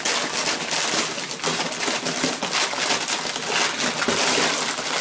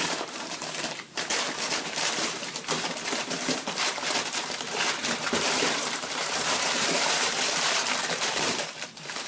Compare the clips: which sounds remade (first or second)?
second